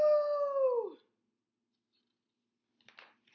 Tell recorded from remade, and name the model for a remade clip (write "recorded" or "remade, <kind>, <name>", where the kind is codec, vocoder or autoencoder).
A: recorded